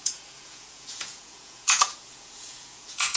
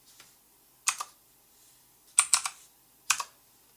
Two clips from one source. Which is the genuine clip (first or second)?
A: second